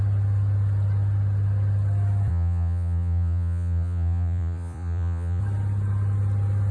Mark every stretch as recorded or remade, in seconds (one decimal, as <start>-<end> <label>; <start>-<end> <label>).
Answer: 0.0-2.3 recorded; 2.3-5.4 remade; 5.4-6.7 recorded